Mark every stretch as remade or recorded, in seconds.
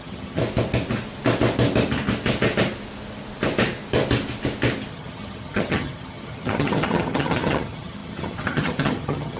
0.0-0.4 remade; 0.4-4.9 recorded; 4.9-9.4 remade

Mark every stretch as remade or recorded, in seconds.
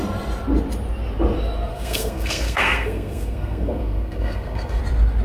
0.0-1.7 recorded; 1.7-4.8 remade; 4.8-5.2 recorded